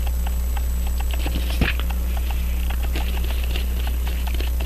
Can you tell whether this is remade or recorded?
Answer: recorded